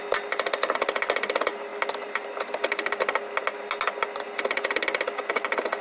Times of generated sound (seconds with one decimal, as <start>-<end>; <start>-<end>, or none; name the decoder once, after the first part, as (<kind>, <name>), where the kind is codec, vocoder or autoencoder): none